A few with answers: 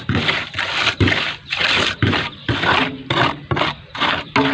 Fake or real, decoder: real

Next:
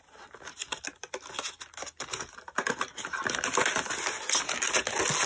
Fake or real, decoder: real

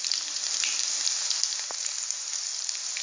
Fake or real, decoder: real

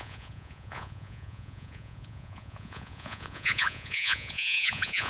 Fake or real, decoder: fake, vocoder, Vocos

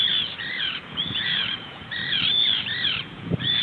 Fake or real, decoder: fake, vocoder, Vocos